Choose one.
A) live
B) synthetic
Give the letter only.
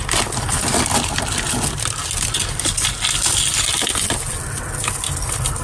A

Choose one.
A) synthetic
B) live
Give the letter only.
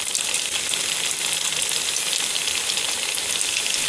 B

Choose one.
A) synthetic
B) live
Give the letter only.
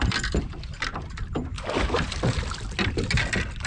B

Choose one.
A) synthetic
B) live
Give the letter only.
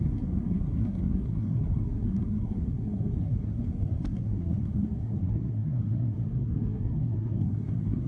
A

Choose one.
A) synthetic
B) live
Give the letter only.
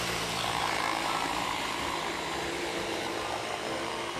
A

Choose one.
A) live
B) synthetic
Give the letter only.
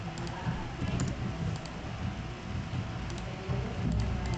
A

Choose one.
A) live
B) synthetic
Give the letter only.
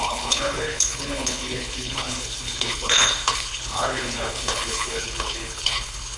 B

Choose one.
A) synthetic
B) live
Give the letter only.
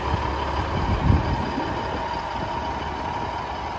B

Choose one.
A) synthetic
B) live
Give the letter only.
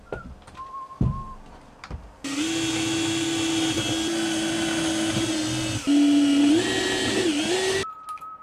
B